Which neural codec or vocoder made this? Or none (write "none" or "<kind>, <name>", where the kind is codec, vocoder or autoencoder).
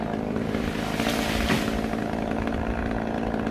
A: none